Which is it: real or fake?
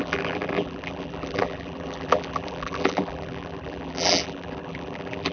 fake